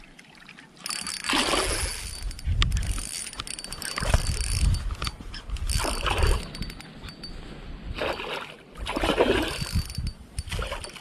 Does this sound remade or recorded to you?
recorded